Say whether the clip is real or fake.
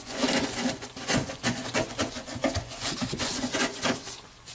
fake